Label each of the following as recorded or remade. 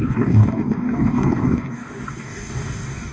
remade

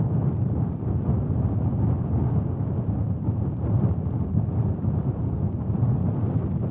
recorded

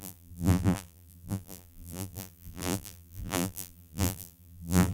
remade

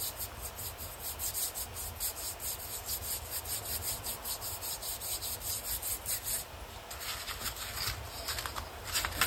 recorded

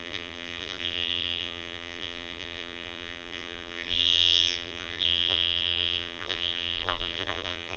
remade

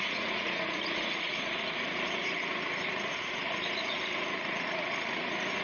remade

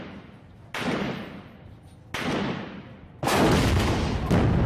recorded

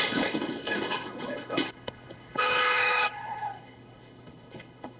remade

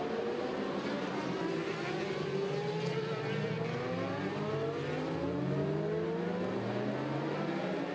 recorded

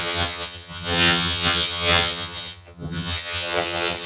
remade